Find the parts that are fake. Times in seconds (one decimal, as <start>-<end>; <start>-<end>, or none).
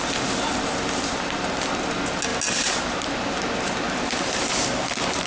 none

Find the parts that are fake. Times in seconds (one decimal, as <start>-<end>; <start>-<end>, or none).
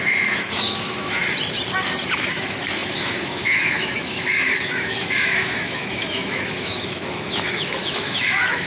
0.0-1.2; 2.1-8.7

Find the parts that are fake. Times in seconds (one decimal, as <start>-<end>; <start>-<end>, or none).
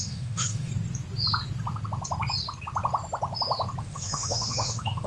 0.0-0.7; 3.8-5.1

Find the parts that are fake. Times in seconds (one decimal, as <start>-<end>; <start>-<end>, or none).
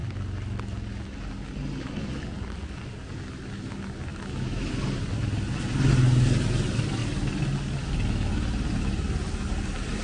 4.1-4.7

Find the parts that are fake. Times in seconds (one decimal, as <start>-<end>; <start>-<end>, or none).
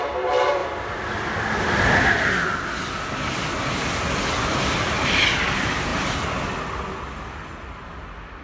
none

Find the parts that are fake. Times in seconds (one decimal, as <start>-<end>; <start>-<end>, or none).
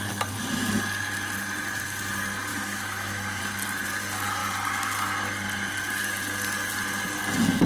2.5-3.4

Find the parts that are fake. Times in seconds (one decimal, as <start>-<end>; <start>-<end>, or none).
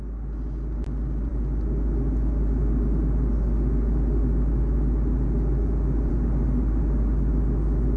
none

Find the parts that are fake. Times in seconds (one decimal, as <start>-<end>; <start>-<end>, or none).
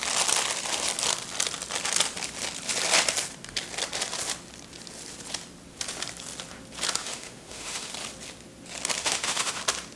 7.0-7.9; 9.0-9.6